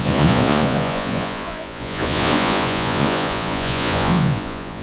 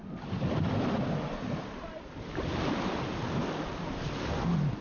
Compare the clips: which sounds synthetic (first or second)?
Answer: first